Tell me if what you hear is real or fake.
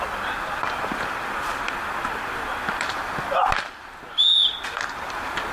real